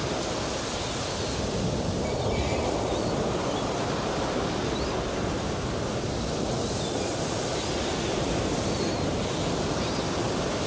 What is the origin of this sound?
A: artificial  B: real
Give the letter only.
B